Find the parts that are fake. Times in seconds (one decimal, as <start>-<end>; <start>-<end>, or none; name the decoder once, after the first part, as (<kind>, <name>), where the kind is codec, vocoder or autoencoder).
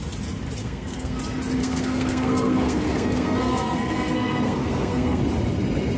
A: 0.6-1.2 (codec, SNAC); 1.6-5.2